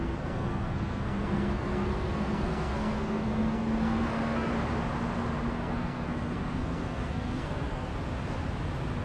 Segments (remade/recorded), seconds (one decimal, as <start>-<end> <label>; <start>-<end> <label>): 0.0-4.5 remade; 4.5-5.5 recorded; 5.5-7.9 remade; 7.9-9.0 recorded

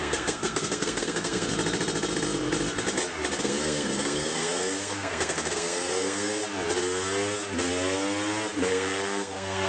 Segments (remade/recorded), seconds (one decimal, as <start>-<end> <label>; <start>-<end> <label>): 0.0-1.5 remade; 1.5-3.4 recorded; 3.4-6.4 remade; 6.4-8.7 recorded; 8.7-9.7 remade

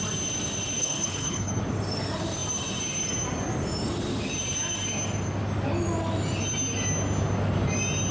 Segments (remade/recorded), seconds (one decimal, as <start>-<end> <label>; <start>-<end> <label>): 0.0-0.8 recorded; 0.8-1.6 remade; 1.6-8.1 recorded

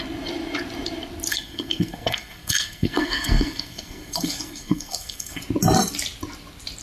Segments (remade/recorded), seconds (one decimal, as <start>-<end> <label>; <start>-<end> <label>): 0.0-1.3 recorded; 1.3-5.4 remade; 5.4-6.8 recorded

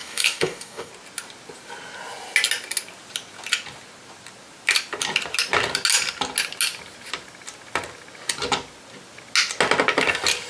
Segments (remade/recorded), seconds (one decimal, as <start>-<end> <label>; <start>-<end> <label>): 0.0-0.9 remade; 0.9-10.5 recorded

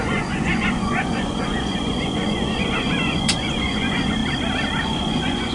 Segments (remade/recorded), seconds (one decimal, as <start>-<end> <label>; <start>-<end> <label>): 0.0-4.2 remade; 4.2-4.8 recorded; 4.8-5.5 remade

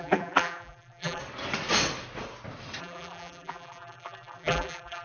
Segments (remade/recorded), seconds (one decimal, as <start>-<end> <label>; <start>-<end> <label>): 0.0-1.2 remade; 1.2-2.8 recorded; 2.8-5.0 remade

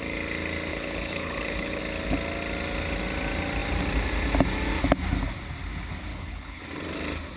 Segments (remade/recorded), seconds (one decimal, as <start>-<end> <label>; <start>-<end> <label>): 0.0-0.7 recorded; 0.7-1.8 remade; 1.8-6.1 recorded; 6.1-6.6 remade; 6.6-7.4 recorded